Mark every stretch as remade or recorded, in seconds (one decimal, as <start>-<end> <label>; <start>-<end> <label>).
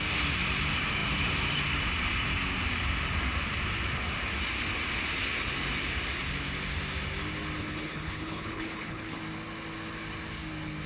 0.0-7.6 recorded; 7.6-9.2 remade; 9.2-10.9 recorded